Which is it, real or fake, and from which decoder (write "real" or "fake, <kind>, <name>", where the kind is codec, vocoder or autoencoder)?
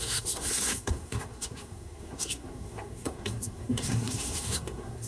fake, codec, SNAC